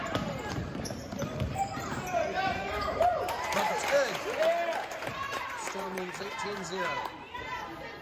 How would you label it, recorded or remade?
remade